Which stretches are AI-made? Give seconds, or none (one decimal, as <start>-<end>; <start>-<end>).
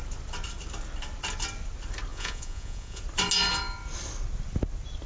2.1-3.0